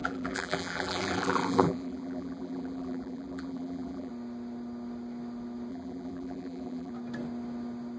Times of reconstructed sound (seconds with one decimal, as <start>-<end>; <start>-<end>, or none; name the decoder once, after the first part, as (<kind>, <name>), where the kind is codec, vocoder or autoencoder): 0.0-4.1 (vocoder, BigVGAN v2); 5.7-6.9